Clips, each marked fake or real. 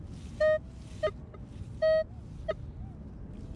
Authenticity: real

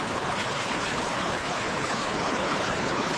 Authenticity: fake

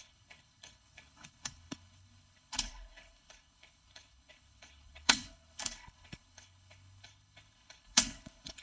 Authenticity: fake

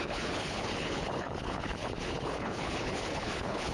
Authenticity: fake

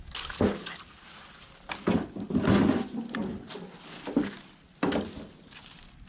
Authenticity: real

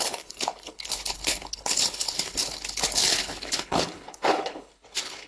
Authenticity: fake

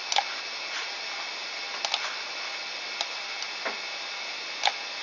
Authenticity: real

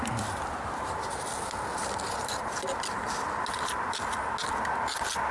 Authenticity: real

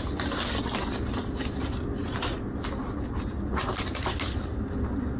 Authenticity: real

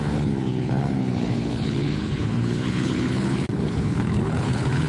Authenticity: fake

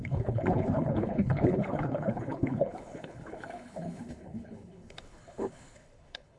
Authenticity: fake